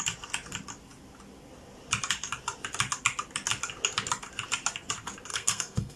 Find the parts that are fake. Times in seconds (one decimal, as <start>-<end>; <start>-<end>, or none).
5.3-6.0